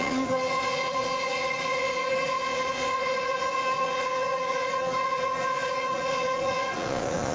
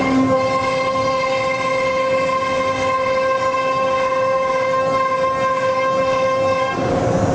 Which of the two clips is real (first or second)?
second